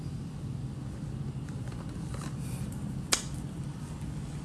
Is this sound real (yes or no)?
yes